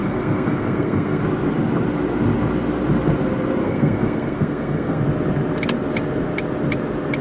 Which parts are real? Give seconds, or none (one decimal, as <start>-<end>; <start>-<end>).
1.2-3.6; 5.0-7.2